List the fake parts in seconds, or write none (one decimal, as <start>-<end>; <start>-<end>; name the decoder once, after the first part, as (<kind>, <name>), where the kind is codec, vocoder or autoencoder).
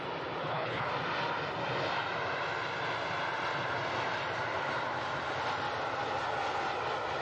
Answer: 0.4-0.9 (codec, HILCodec)